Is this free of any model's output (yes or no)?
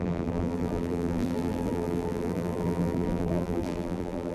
no